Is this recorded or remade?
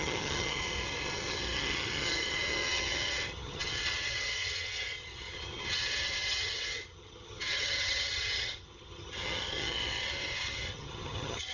remade